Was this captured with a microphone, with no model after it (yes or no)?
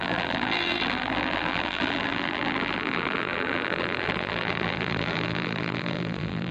no